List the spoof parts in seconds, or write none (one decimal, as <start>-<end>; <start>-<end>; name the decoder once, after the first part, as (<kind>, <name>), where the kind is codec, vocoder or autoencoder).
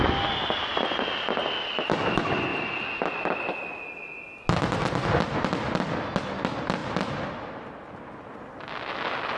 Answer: none